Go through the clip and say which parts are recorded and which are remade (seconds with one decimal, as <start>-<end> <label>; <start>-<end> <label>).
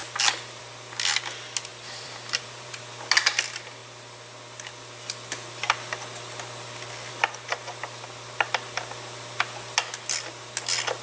0.0-1.7 recorded; 1.7-2.8 remade; 2.8-11.0 recorded